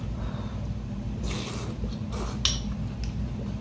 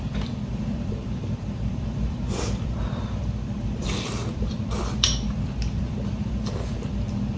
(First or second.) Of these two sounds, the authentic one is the first